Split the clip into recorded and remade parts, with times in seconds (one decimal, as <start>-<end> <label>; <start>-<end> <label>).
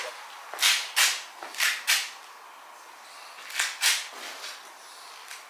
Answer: 0.0-5.5 recorded